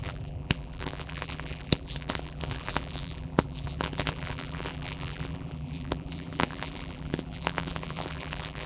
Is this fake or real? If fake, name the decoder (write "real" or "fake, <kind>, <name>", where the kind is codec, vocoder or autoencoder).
fake, vocoder, BigVGAN v2